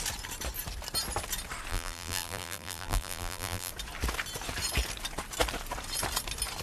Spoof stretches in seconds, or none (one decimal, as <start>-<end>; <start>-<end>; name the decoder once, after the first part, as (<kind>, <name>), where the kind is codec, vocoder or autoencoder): 1.7-3.7 (vocoder, BigVGAN v2)